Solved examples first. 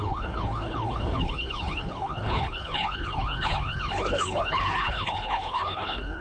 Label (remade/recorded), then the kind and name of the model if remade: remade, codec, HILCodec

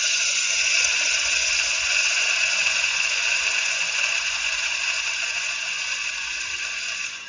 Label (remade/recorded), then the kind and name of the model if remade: remade, vocoder, Vocos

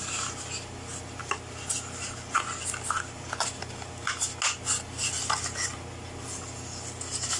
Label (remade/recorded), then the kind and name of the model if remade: recorded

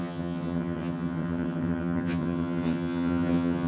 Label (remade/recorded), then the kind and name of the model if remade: remade, vocoder, HiFi-GAN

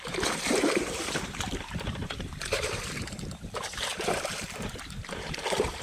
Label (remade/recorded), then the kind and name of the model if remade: remade, vocoder, BigVGAN v2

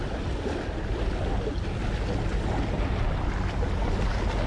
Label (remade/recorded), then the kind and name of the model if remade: recorded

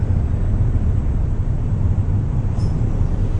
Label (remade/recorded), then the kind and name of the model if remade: remade, vocoder, BigVGAN v2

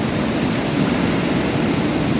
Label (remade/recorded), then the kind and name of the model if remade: recorded